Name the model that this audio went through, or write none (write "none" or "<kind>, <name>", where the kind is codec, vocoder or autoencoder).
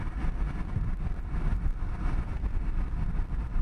none